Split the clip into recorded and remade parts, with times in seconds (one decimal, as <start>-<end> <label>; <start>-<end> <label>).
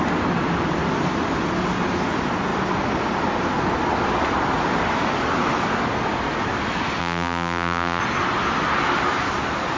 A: 0.0-7.0 recorded; 7.0-8.0 remade; 8.0-9.8 recorded